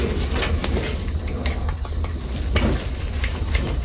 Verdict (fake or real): real